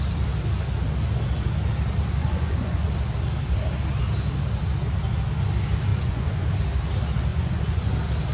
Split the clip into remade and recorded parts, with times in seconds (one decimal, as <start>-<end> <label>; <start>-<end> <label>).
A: 0.0-2.2 recorded; 2.2-2.9 remade; 2.9-5.9 recorded; 5.9-6.5 remade; 6.5-7.3 recorded; 7.3-7.9 remade; 7.9-8.3 recorded